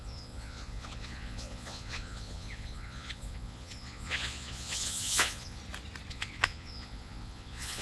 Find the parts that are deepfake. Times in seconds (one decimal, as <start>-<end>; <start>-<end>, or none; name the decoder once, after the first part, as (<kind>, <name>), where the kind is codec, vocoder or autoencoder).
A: 0.0-5.6 (vocoder, Vocos); 6.1-7.8